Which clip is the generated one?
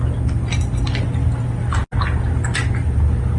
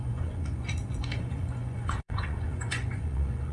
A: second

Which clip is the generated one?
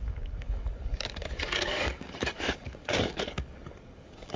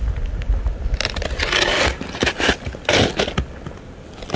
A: first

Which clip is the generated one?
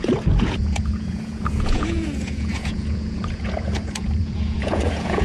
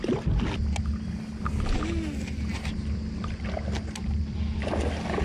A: first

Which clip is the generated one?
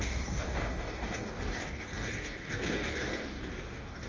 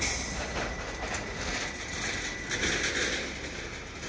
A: first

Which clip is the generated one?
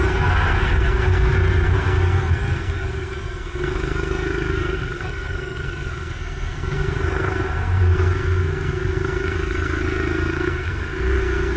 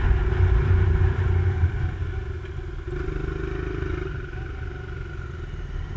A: first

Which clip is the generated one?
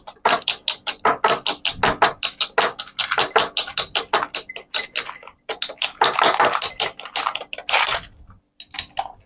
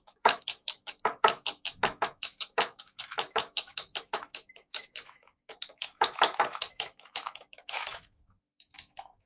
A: second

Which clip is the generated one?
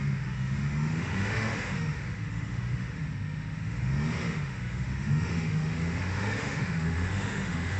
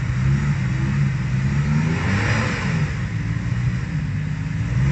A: first